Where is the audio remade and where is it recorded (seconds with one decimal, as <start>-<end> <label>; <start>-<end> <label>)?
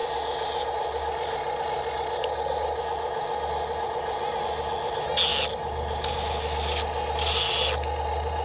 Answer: 0.0-8.4 recorded